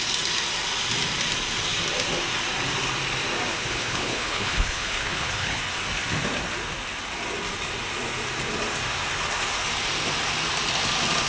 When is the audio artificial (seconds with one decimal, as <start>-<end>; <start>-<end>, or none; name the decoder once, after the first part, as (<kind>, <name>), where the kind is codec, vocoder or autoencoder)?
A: 3.5-5.6 (codec, HILCodec)